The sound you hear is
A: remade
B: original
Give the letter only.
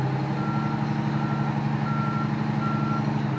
B